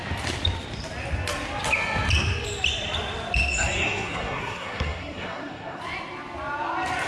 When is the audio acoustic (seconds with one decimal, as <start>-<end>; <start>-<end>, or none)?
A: 0.0-3.8; 5.8-7.1